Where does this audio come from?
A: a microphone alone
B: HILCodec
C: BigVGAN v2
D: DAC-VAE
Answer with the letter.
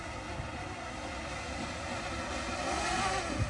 A